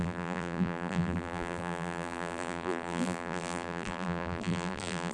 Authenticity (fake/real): fake